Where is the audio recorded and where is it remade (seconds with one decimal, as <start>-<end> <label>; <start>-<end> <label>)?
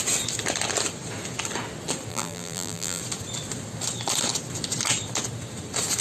0.0-2.1 recorded; 2.1-3.0 remade; 3.0-6.0 recorded